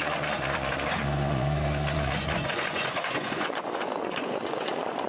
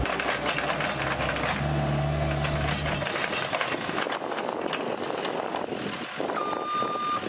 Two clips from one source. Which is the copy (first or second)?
first